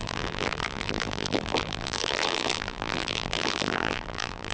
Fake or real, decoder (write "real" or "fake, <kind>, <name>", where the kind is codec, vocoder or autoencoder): fake, vocoder, BigVGAN v2